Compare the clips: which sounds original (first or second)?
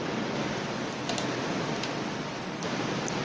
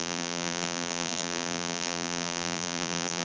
first